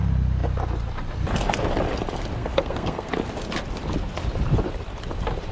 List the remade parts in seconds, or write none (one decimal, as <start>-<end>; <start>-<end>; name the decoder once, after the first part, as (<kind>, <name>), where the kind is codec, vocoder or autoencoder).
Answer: 2.4-3.1 (codec, SNAC)